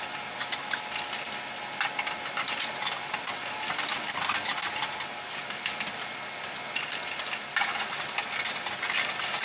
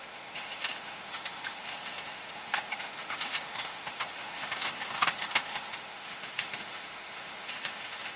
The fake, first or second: second